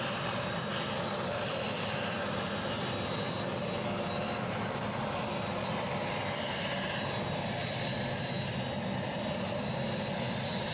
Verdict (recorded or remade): recorded